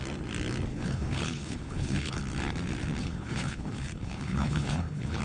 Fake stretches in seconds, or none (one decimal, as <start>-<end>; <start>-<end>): 0.7-2.2; 3.0-5.2